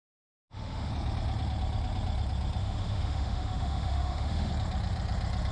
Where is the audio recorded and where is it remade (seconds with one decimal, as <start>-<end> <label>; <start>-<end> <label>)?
0.0-0.9 remade; 0.9-2.6 recorded; 2.6-4.5 remade; 4.5-5.5 recorded